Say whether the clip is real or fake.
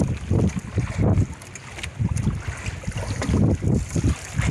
real